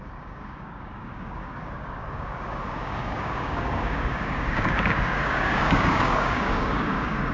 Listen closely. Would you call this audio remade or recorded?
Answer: remade